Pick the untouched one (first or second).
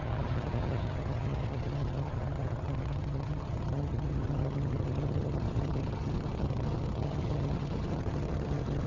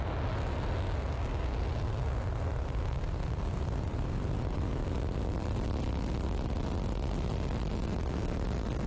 second